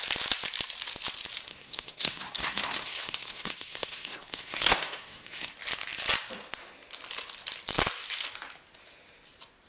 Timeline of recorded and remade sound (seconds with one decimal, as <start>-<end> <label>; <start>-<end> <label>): 0.0-1.5 recorded; 1.5-5.5 remade; 5.5-9.7 recorded